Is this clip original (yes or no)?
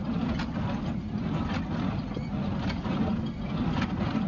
yes